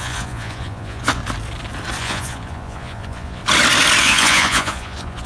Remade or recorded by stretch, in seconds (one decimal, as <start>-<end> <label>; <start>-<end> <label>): 0.0-1.2 remade; 1.2-2.0 recorded; 2.0-3.4 remade; 3.4-4.0 recorded; 4.0-5.3 remade